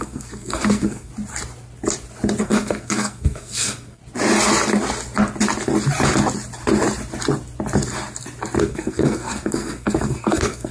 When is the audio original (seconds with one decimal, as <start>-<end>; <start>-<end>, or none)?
1.1-2.4; 4.0-8.6